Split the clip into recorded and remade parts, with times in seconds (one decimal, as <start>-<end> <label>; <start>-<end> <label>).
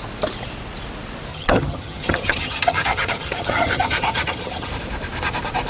0.0-1.3 recorded; 1.3-4.7 remade; 4.7-5.7 recorded